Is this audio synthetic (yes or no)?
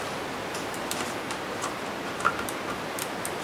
no